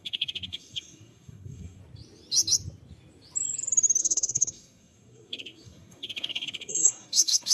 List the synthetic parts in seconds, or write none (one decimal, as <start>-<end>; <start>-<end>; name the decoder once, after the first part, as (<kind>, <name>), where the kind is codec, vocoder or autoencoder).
0.0-1.8 (codec, SNAC); 4.0-7.5